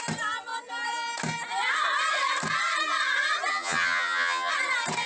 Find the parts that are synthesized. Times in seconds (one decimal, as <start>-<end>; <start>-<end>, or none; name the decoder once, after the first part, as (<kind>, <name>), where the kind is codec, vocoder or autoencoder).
3.5-4.5 (vocoder, HiFi-GAN)